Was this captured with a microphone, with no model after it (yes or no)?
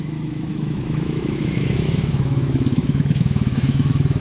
no